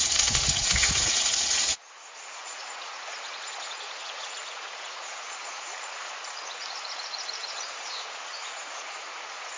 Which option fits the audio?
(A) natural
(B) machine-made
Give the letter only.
B